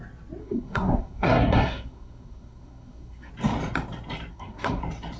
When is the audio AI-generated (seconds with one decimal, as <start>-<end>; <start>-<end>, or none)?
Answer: 0.4-3.3; 4.3-4.8

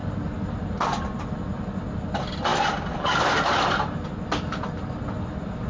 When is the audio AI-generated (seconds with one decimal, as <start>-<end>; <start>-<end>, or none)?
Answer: none

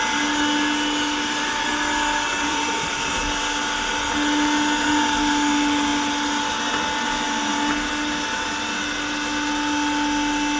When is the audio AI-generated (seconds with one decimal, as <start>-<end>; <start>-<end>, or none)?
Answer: 2.5-3.1

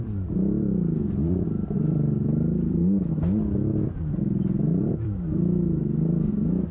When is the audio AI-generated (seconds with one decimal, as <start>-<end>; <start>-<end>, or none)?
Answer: 0.0-2.8; 4.8-6.7